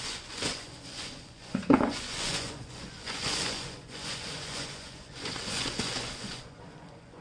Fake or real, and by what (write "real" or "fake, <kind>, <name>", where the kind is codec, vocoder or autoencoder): fake, vocoder, Vocos